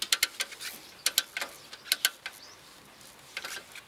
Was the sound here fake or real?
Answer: real